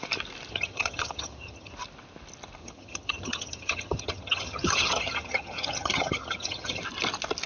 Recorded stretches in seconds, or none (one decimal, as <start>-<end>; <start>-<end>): 0.0-0.5; 1.7-2.6; 6.8-7.5